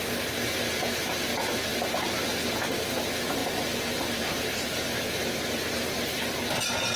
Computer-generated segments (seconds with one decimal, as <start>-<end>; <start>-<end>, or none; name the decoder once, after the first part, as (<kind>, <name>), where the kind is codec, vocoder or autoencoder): 3.4-4.9 (vocoder, BigVGAN v2)